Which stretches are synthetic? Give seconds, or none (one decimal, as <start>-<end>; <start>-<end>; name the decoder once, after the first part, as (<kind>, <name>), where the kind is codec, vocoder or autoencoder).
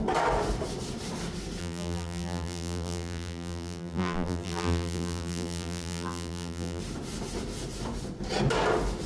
1.6-6.8 (vocoder, BigVGAN v2)